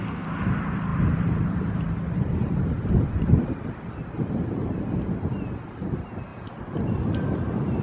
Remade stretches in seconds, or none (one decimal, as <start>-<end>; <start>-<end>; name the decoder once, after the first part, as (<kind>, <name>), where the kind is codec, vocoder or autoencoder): 0.9-1.6 (vocoder, BigVGAN v2)